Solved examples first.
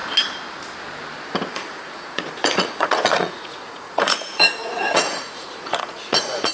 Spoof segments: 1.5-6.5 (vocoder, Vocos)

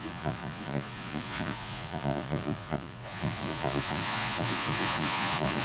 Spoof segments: 0.0-5.6 (vocoder, Vocos)

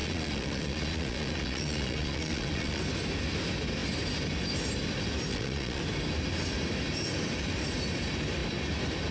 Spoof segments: 0.0-2.8 (vocoder, Vocos); 5.3-5.8

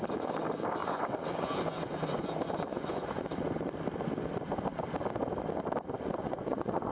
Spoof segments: 0.8-3.2 (vocoder, Vocos); 6.2-6.9

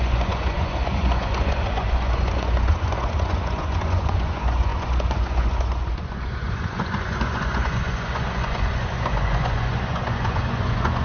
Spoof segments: 0.0-11.0 (vocoder, Vocos)